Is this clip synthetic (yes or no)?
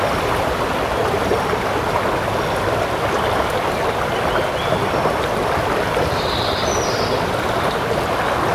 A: no